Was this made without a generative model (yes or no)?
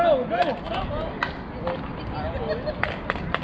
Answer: yes